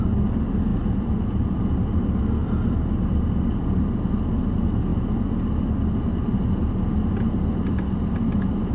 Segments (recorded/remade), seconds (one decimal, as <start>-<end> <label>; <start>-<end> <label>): 0.0-0.7 recorded; 0.7-1.6 remade; 1.6-2.4 recorded; 2.4-3.8 remade; 3.8-8.7 recorded